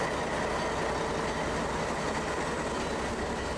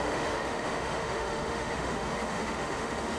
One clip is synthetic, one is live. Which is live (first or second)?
first